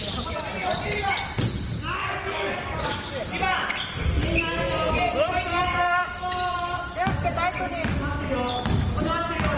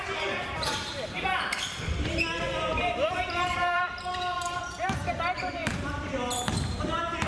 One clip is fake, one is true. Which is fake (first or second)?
second